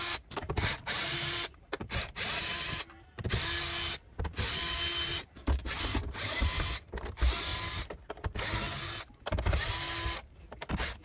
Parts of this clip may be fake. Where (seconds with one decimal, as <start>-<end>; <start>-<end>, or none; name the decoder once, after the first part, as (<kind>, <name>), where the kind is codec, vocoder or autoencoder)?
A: 2.5-3.2 (vocoder, BigVGAN v2)